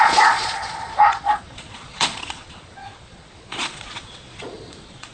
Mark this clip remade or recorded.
remade